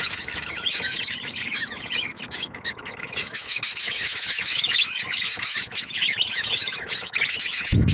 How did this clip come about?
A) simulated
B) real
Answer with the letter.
A